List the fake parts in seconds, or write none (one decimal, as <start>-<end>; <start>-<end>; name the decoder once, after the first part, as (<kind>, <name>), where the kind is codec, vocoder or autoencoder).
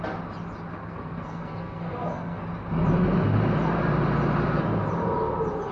0.7-2.4 (codec, SNAC)